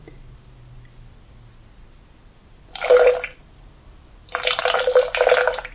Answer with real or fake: real